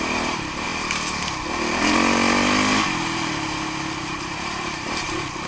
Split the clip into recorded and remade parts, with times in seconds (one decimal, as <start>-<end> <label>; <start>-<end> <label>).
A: 0.0-0.7 remade; 0.7-4.0 recorded; 4.0-5.5 remade